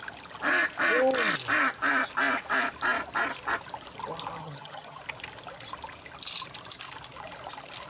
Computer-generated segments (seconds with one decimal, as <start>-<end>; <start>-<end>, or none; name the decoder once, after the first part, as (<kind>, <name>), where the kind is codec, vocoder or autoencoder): 4.4-5.0 (vocoder, HiFi-GAN)